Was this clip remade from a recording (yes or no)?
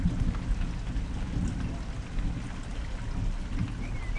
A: no